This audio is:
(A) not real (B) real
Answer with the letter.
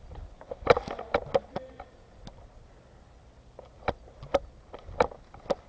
B